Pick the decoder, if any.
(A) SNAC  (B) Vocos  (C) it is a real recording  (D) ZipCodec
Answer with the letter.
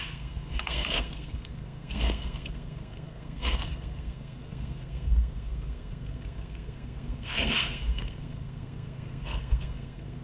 A